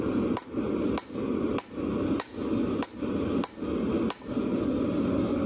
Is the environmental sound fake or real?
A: real